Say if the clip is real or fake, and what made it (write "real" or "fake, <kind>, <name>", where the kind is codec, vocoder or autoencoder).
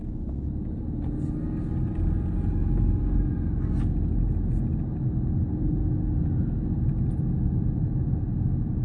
real